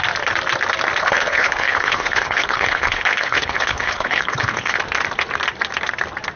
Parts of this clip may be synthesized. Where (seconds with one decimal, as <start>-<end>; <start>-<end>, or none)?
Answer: 1.0-4.8